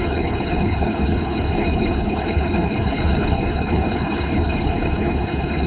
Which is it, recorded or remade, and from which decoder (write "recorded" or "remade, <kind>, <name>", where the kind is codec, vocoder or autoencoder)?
remade, codec, HILCodec